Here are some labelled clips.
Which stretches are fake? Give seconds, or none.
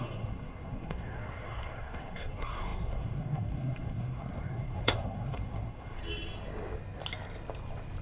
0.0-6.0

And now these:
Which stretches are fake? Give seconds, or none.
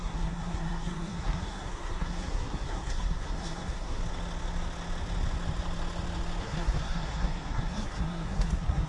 0.0-4.0; 6.4-8.9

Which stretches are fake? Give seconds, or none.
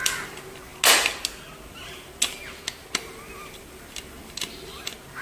none